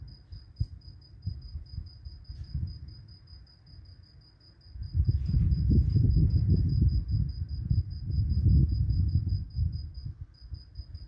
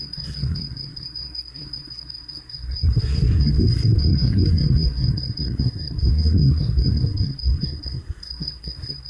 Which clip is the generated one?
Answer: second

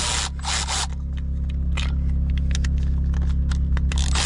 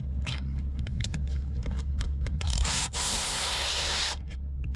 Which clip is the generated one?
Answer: second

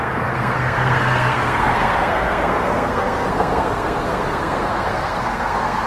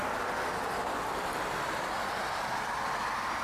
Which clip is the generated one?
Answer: first